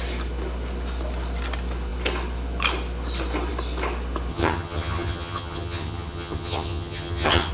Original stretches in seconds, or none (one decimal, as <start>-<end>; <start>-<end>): 0.0-4.3